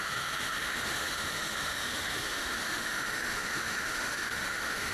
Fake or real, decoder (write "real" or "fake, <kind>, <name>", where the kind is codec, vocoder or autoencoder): fake, autoencoder, DAC-VAE